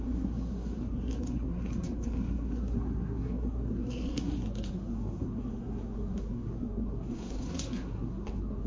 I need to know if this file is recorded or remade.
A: remade